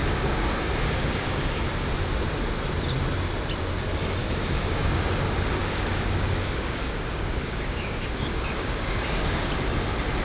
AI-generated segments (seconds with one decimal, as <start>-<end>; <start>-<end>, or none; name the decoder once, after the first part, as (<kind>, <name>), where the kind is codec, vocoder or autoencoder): 0.0-1.6 (codec, DAC); 4.2-9.5